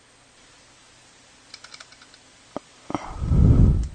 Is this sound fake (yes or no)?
no